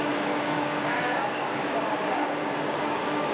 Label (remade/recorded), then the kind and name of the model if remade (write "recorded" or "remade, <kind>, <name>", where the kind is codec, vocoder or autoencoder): remade, codec, DAC